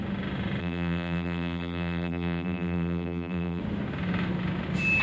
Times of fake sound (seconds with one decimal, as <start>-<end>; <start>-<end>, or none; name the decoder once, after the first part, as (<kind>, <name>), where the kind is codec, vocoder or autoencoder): 0.6-3.6 (vocoder, BigVGAN v2)